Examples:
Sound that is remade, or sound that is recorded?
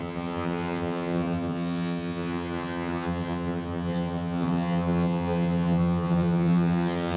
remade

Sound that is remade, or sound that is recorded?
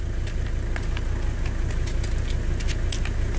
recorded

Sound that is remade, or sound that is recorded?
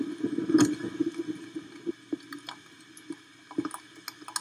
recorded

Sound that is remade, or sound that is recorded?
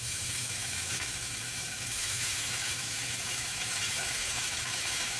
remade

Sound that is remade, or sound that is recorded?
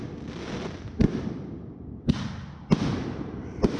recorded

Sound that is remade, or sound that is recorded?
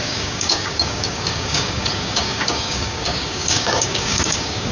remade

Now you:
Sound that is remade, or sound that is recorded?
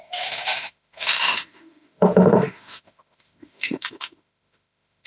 remade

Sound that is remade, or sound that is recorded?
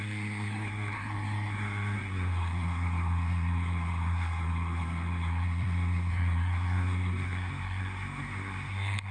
remade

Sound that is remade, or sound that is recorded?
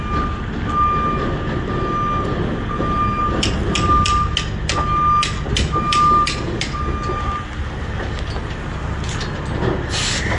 recorded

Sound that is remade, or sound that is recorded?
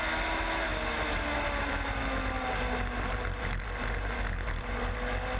recorded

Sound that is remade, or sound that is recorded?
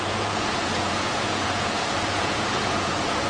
remade